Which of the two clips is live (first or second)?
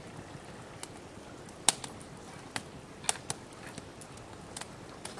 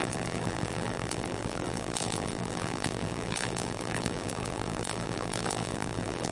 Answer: first